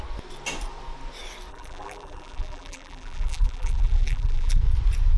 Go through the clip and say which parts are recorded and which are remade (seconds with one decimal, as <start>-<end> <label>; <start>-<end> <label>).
0.0-1.5 recorded; 1.5-4.6 remade; 4.6-5.2 recorded